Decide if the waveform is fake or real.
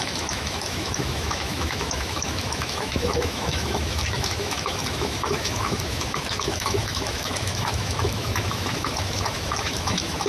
fake